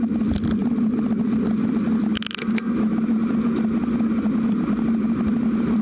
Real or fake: real